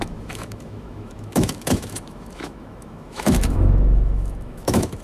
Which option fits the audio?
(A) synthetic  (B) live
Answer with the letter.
A